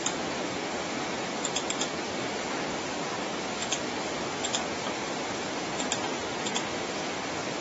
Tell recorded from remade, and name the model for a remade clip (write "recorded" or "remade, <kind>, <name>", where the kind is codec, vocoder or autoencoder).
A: recorded